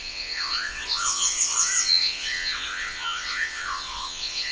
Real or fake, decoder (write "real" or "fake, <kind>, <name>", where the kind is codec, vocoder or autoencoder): fake, vocoder, WaveNeXt